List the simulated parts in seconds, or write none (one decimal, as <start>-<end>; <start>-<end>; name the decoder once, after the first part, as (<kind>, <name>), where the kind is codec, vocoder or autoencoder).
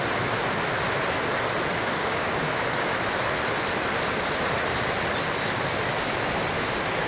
1.7-2.4 (codec, DAC)